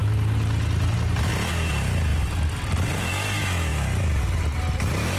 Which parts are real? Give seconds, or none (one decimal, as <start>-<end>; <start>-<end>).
0.0-2.1; 3.0-3.7; 4.2-5.2

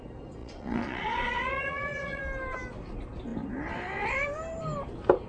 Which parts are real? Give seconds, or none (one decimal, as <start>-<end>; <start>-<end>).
0.0-0.4; 2.2-5.3

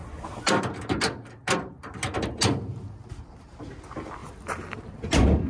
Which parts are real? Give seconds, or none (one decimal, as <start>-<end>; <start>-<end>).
0.0-4.2

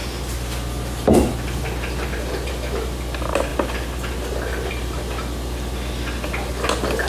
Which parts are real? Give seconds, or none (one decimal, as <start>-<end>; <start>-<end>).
0.0-7.1

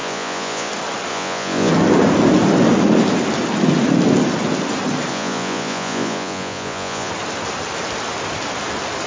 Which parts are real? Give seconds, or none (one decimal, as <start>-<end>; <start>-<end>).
0.7-1.1; 1.7-5.1; 7.1-9.1

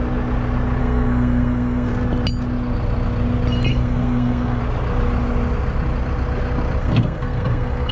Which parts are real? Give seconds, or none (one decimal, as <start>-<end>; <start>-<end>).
0.0-0.8; 1.9-3.7; 4.6-6.8